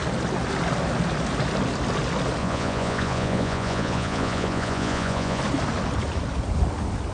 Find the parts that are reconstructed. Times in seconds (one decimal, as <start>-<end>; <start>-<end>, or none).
2.4-5.4